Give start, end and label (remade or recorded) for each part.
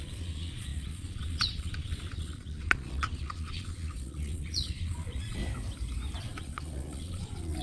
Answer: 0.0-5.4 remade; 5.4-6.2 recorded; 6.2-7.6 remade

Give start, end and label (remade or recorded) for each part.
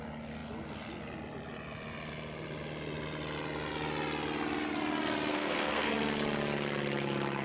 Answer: 0.0-5.3 recorded; 5.3-5.9 remade; 5.9-7.4 recorded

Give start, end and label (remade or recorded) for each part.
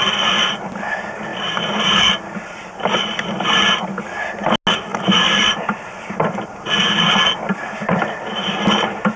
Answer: 0.0-1.3 recorded; 1.3-2.0 remade; 2.0-4.9 recorded; 4.9-6.7 remade; 6.7-9.2 recorded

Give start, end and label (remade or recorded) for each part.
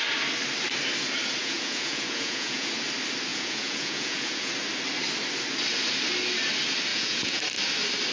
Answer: 0.0-1.4 recorded; 1.4-2.7 remade; 2.7-3.3 recorded; 3.3-4.5 remade; 4.5-6.9 recorded; 6.9-7.4 remade; 7.4-8.1 recorded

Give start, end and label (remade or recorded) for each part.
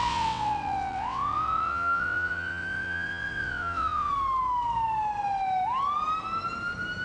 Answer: 0.0-4.1 remade; 4.1-7.0 recorded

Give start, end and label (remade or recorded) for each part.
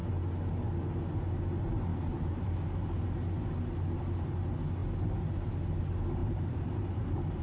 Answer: 0.0-1.9 recorded; 1.9-2.5 remade; 2.5-6.2 recorded; 6.2-7.4 remade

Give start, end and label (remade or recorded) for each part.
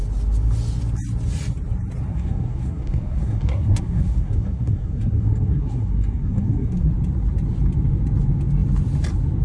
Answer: 0.0-2.1 recorded; 2.1-6.9 remade; 6.9-9.4 recorded